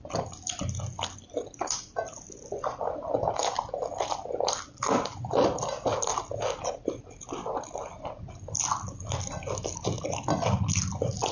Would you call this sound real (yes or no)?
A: yes